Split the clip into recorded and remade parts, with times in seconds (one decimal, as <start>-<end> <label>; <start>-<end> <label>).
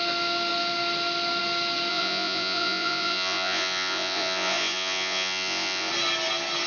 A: 0.0-1.9 recorded; 1.9-5.9 remade; 5.9-6.7 recorded